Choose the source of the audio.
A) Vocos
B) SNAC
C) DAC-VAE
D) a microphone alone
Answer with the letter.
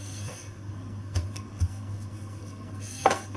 B